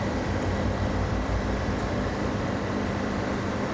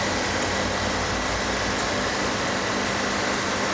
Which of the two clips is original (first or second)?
second